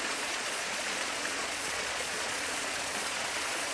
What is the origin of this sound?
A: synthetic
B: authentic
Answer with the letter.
A